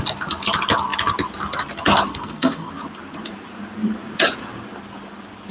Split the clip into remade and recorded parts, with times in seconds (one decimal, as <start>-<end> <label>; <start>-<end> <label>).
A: 0.0-2.1 recorded; 2.1-2.7 remade; 2.7-5.5 recorded